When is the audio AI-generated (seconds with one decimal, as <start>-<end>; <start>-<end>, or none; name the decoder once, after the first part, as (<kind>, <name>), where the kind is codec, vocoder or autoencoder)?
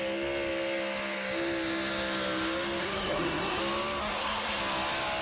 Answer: 2.8-3.6 (codec, SNAC); 4.0-4.6